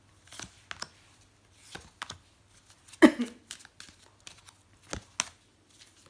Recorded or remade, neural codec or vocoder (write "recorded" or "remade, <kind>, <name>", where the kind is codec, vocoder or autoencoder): recorded